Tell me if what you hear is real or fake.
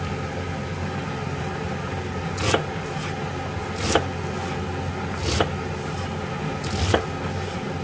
real